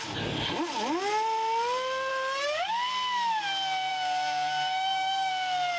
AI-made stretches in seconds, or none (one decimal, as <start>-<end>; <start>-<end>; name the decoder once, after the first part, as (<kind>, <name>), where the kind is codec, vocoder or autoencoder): 2.1-2.9 (codec, DAC); 3.9-5.3